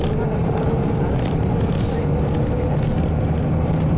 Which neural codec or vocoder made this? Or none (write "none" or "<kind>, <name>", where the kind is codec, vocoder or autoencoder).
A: vocoder, BigVGAN v2